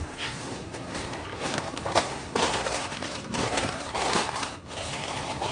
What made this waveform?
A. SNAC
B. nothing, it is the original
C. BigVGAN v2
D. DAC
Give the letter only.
A